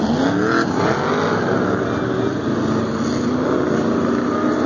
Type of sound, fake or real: real